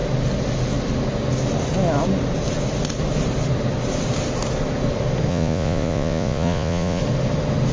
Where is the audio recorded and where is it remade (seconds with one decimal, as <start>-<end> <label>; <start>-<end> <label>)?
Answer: 0.0-5.3 recorded; 5.3-7.0 remade; 7.0-7.7 recorded